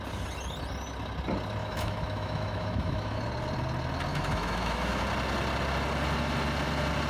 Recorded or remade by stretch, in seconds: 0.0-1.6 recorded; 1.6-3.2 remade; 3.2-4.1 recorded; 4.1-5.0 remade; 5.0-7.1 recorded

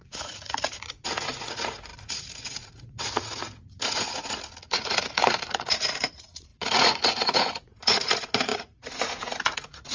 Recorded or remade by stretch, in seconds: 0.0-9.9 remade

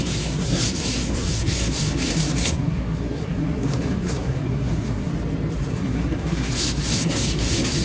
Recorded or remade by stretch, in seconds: 0.0-5.1 remade; 5.1-5.7 recorded; 5.7-7.8 remade

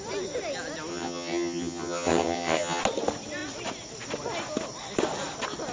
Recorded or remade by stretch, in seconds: 0.0-0.9 recorded; 0.9-2.8 remade; 2.8-5.7 recorded

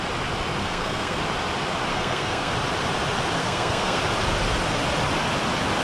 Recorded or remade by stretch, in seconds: 0.0-0.6 recorded; 0.6-1.2 remade; 1.2-1.9 recorded; 1.9-2.5 remade; 2.5-3.4 recorded; 3.4-4.0 remade; 4.0-5.8 recorded

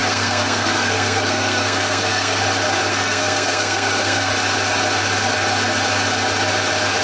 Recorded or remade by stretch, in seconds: 0.0-2.4 remade; 2.4-2.9 recorded; 2.9-4.3 remade; 4.3-7.0 recorded

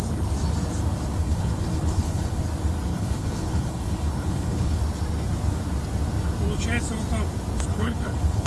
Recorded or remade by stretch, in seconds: 0.0-1.2 recorded; 1.2-2.4 remade; 2.4-2.9 recorded; 2.9-4.8 remade; 4.8-7.7 recorded; 7.7-8.5 remade